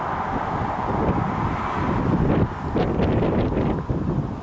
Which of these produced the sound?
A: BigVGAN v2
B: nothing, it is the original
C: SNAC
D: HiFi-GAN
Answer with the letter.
B